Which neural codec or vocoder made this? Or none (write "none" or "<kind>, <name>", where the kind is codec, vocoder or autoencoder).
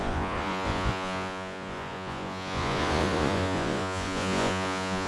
vocoder, Vocos